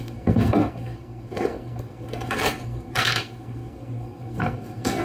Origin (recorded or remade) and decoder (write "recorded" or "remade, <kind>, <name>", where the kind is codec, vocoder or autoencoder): remade, codec, SNAC